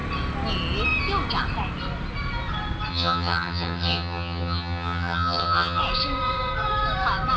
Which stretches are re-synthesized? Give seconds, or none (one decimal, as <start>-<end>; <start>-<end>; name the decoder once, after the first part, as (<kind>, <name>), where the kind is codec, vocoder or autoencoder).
2.9-5.8 (vocoder, HiFi-GAN)